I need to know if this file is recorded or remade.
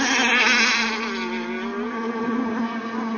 recorded